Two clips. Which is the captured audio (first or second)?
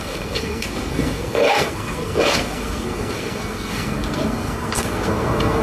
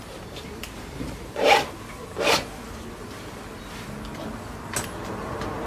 second